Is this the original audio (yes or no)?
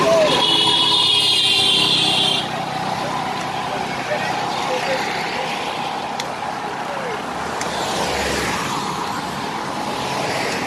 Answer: yes